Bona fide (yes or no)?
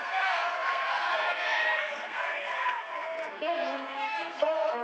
no